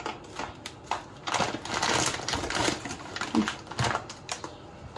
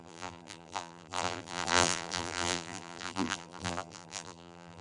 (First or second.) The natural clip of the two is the first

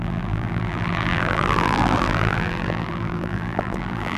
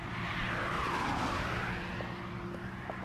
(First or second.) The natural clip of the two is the second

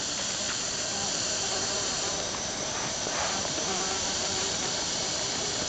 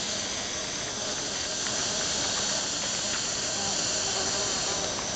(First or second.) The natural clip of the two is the second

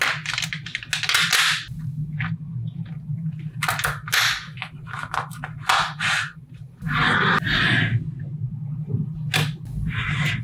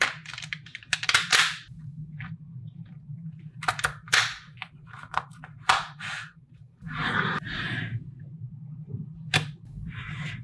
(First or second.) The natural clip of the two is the first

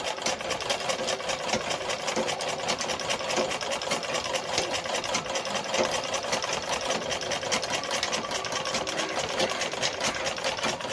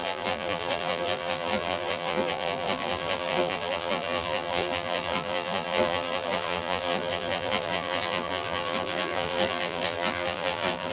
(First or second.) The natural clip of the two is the first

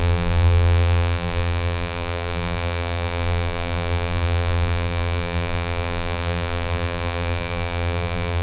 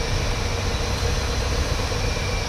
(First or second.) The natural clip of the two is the second